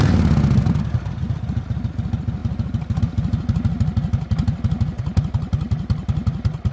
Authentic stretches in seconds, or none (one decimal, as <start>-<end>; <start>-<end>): 0.0-6.7